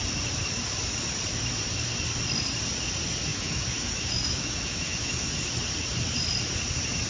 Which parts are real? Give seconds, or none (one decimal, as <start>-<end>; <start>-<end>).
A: 0.0-3.3; 5.3-7.1